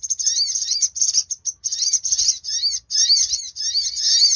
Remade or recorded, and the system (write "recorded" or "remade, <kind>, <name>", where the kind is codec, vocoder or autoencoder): recorded